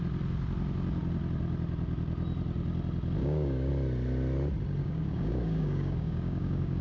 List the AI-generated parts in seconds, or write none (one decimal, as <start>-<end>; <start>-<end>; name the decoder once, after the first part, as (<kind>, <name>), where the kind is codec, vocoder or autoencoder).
3.2-3.7 (codec, DAC); 4.8-6.8